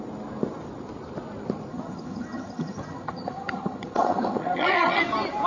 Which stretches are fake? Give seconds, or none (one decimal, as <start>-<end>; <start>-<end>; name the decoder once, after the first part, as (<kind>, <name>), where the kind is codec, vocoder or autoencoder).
1.7-5.0 (vocoder, HiFi-GAN)